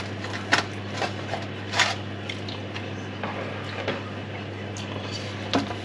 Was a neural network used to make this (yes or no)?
no